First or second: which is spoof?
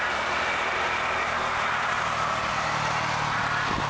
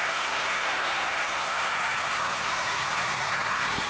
second